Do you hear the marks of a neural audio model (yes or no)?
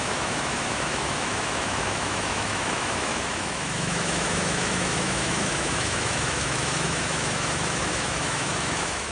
yes